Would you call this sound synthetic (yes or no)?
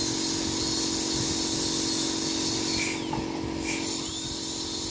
no